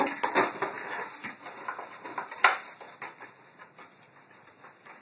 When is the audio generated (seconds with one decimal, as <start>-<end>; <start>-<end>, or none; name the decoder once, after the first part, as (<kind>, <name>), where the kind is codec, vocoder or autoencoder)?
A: none